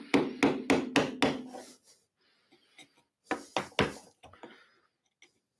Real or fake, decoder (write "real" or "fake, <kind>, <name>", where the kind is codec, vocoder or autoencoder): real